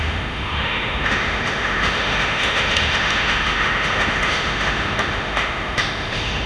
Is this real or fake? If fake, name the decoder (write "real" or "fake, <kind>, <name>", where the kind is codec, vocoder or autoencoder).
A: fake, autoencoder, DAC-VAE